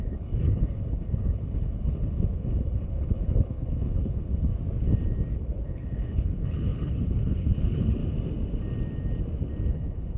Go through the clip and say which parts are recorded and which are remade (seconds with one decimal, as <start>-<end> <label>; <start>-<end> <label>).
0.0-4.5 remade; 4.5-5.3 recorded; 5.3-8.0 remade; 8.0-9.7 recorded; 9.7-10.2 remade

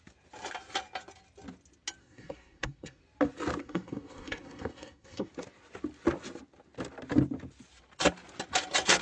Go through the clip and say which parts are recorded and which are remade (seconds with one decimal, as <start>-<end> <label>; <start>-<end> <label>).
0.0-2.0 recorded; 2.0-3.0 remade; 3.0-3.6 recorded; 3.6-5.3 remade; 5.3-9.0 recorded

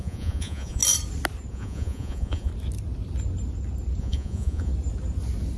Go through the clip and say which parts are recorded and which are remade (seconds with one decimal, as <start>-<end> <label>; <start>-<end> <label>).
0.0-0.8 remade; 0.8-1.5 recorded; 1.5-2.5 remade; 2.5-4.0 recorded; 4.0-4.7 remade; 4.7-5.6 recorded

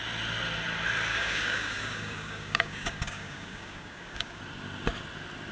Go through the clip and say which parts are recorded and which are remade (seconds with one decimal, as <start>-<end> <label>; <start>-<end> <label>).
0.0-1.1 recorded; 1.1-4.4 remade; 4.4-5.5 recorded